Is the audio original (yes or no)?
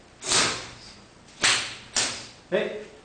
yes